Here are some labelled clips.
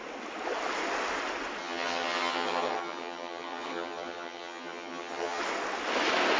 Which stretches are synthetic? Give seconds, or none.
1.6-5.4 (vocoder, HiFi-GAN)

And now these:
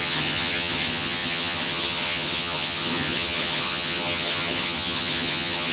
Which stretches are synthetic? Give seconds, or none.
0.0-5.7 (vocoder, HiFi-GAN)

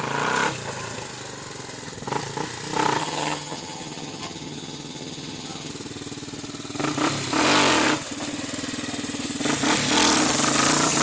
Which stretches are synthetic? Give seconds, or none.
3.0-5.7 (vocoder, HiFi-GAN)